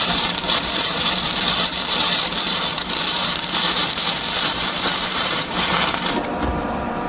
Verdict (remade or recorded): remade